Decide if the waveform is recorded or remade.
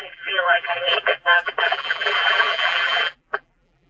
remade